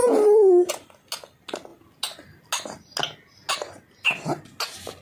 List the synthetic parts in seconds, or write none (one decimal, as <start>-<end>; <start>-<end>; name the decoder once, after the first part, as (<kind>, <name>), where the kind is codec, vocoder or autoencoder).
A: none